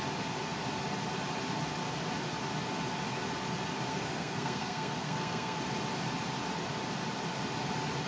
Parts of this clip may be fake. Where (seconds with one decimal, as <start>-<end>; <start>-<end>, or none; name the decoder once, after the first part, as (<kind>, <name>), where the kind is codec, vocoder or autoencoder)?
3.9-5.6 (codec, SNAC)